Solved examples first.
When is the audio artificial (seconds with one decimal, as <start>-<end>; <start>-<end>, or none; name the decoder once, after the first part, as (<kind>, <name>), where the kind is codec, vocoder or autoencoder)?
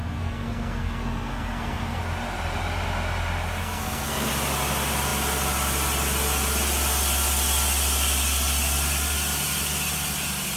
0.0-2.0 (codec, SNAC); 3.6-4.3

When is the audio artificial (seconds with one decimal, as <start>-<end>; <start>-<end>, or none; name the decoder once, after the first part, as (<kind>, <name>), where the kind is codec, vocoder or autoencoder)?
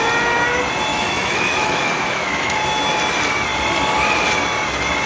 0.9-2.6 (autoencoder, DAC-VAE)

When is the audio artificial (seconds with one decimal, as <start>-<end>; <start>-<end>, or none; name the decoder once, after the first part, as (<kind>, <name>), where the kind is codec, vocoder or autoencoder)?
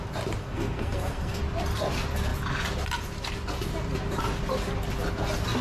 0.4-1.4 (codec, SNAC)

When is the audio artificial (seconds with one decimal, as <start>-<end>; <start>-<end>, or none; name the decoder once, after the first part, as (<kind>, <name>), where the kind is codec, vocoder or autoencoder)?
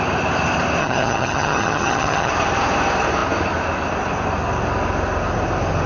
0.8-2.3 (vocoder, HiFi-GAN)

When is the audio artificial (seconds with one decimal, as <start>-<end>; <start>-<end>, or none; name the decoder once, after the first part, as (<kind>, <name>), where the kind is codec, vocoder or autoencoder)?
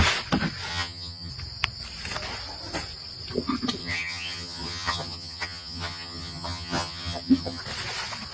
0.7-1.3 (vocoder, HiFi-GAN); 3.8-7.6